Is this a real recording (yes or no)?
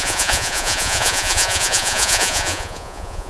no